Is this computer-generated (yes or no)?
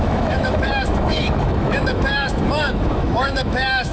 yes